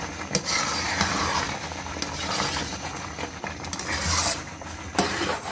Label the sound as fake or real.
real